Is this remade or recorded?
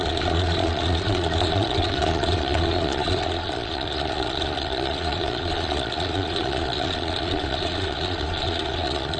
remade